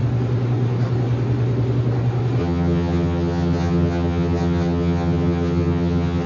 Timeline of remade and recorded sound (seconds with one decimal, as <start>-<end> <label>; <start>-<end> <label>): 0.0-2.4 recorded; 2.4-6.3 remade